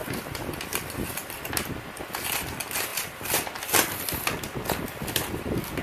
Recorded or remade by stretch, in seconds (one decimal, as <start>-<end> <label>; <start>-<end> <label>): 0.0-5.8 recorded